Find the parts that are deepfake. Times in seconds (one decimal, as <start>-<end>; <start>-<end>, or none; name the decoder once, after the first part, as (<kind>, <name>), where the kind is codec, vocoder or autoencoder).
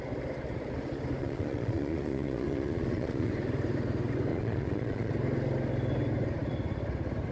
1.2-3.3 (vocoder, Vocos); 4.3-5.1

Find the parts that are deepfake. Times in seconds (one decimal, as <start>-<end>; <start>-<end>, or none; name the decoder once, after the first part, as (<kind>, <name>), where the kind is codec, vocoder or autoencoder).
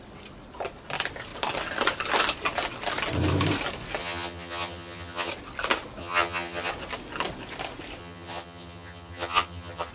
4.0-5.3 (vocoder, HiFi-GAN); 6.0-6.7; 8.0-9.9